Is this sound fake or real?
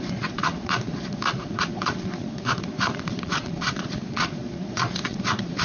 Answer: fake